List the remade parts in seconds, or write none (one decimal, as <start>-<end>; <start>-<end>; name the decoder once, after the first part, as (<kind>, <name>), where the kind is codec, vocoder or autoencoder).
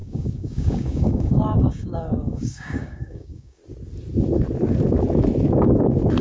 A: 0.0-3.6 (codec, DAC)